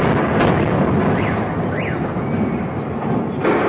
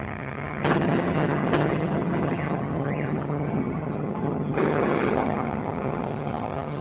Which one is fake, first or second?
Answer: second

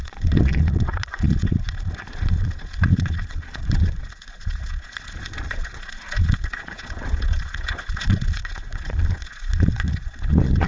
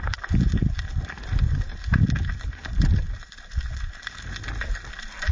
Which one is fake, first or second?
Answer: first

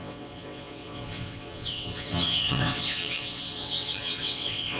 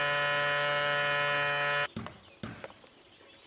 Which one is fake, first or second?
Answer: first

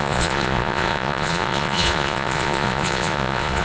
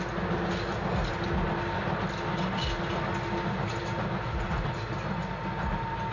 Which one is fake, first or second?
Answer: first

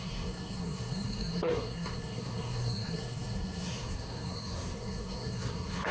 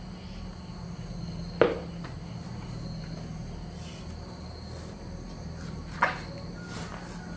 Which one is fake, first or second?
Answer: first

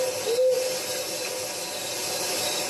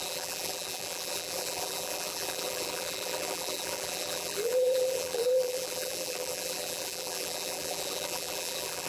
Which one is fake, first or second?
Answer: second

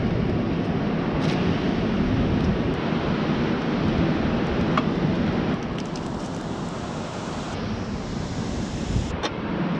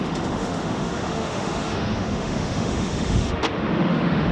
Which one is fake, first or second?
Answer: second